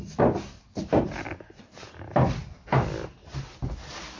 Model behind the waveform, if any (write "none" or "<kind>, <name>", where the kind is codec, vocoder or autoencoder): none